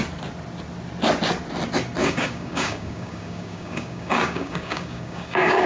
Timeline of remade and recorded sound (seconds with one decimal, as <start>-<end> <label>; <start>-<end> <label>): 0.0-2.0 recorded; 2.0-5.7 remade